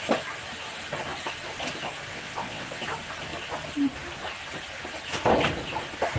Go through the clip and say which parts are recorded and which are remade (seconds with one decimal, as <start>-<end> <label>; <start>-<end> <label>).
0.0-2.1 recorded; 2.1-2.8 remade; 2.8-6.2 recorded